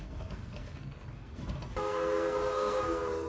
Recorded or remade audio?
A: remade